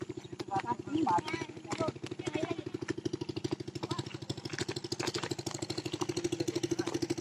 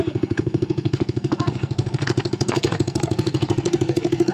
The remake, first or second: second